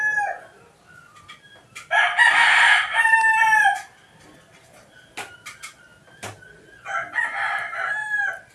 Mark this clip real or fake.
real